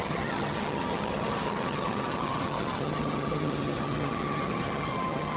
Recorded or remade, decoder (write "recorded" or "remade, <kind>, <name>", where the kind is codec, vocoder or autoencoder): remade, vocoder, HiFi-GAN